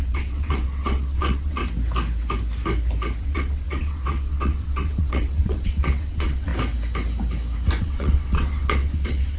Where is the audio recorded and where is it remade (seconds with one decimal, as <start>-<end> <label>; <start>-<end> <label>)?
0.0-1.6 remade; 1.6-3.2 recorded; 3.2-6.5 remade; 6.5-7.8 recorded; 7.8-9.4 remade